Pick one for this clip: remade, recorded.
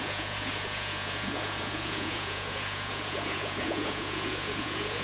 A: remade